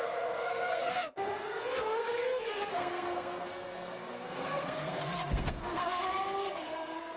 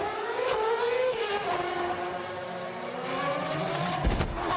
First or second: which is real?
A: second